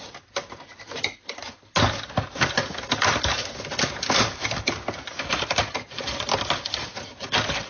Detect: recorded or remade recorded